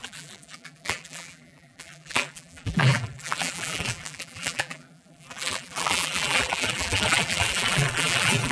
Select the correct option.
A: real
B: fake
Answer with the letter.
B